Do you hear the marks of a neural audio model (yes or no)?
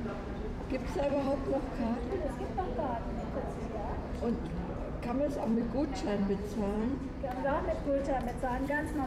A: yes